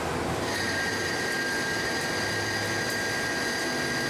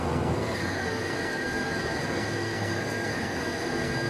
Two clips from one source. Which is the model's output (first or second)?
second